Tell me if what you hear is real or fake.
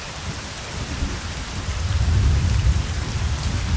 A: fake